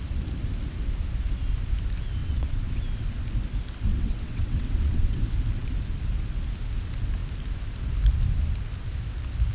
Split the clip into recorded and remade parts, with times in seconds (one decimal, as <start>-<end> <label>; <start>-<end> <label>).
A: 0.0-2.2 recorded; 2.2-2.8 remade; 2.8-3.9 recorded; 3.9-5.2 remade; 5.2-9.5 recorded